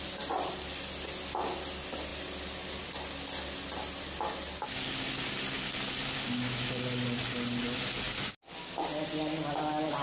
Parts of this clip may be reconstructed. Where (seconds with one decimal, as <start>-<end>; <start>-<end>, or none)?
none